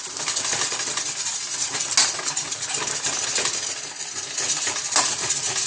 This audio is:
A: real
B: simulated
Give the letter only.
A